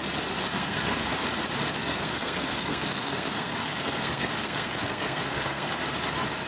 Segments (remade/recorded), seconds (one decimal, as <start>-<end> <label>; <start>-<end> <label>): 0.0-0.5 recorded; 0.5-1.1 remade; 1.1-1.8 recorded; 1.8-5.7 remade; 5.7-6.5 recorded